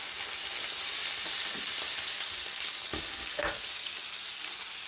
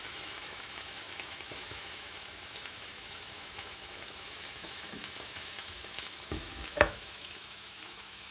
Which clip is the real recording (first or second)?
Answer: first